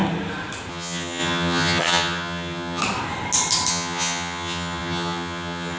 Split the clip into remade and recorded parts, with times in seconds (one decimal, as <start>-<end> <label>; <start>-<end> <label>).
0.0-0.7 recorded; 0.7-2.8 remade; 2.8-3.7 recorded; 3.7-5.8 remade